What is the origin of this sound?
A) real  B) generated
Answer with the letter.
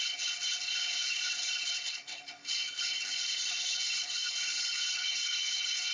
B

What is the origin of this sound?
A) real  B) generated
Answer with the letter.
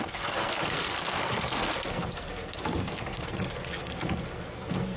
B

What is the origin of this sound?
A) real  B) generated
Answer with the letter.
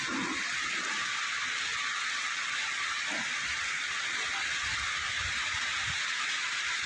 B